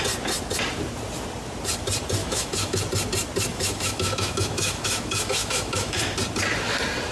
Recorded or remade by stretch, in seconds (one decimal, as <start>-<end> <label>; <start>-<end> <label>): 0.0-2.2 recorded; 2.2-2.8 remade; 2.8-3.5 recorded; 3.5-6.0 remade; 6.0-7.1 recorded